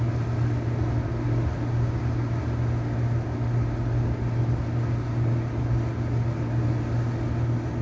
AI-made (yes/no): no